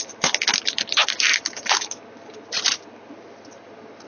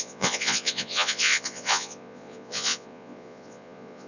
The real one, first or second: first